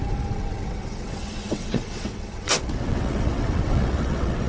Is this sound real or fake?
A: fake